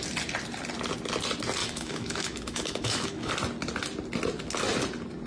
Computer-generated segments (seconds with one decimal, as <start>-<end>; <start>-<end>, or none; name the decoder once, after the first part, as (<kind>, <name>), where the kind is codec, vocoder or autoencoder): 1.6-3.3 (autoencoder, DAC-VAE)